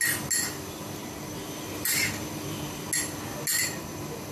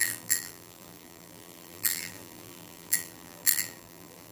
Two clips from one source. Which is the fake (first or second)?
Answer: second